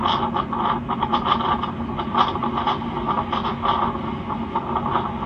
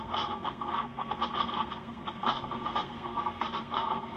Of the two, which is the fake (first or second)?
second